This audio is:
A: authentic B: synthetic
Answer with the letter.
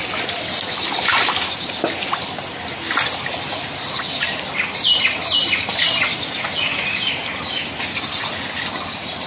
A